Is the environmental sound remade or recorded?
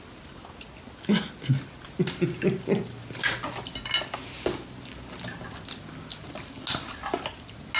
recorded